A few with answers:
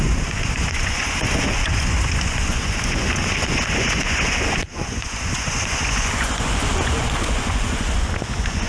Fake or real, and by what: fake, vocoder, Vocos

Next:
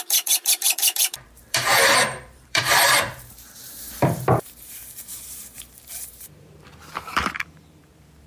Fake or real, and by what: fake, vocoder, BigVGAN v2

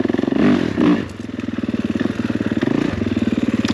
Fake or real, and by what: real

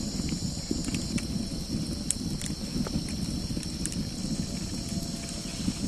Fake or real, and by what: real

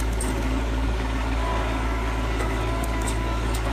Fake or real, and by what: fake, codec, DAC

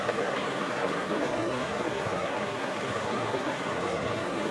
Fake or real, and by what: fake, codec, SNAC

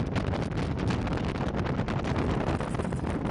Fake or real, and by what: real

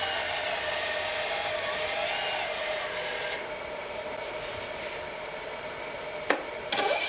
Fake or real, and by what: real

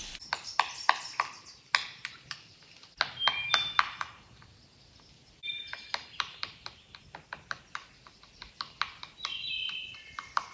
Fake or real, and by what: real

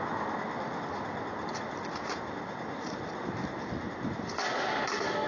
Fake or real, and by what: real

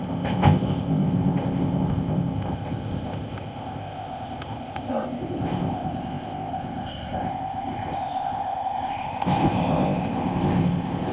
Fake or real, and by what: fake, codec, ZipCodec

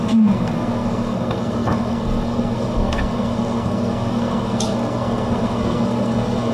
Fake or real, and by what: fake, codec, SNAC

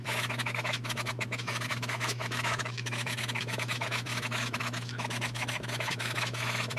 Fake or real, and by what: fake, autoencoder, DAC-VAE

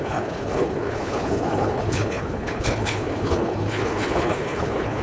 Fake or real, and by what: fake, codec, HILCodec